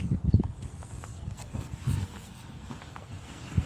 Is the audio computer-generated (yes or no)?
yes